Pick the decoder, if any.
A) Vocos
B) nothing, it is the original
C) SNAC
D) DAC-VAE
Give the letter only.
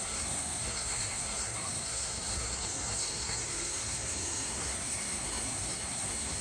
C